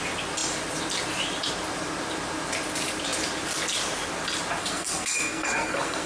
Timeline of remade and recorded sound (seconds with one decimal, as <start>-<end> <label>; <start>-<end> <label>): 0.0-4.6 recorded; 4.6-6.1 remade